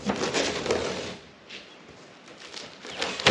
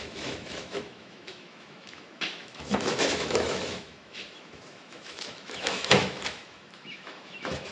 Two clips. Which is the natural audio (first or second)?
first